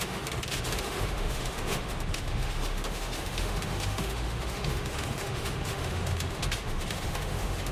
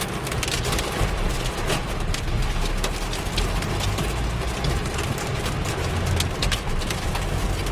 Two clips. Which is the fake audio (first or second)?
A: first